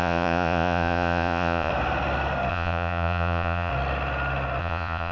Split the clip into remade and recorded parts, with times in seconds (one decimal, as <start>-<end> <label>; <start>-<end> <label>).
0.0-1.7 remade; 1.7-2.5 recorded; 2.5-3.7 remade; 3.7-4.6 recorded; 4.6-5.1 remade